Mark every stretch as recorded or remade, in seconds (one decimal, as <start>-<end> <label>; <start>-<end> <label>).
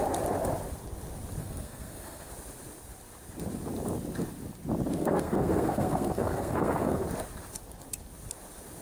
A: 0.0-1.4 recorded; 1.4-2.3 remade; 2.3-4.9 recorded; 4.9-7.0 remade; 7.0-8.8 recorded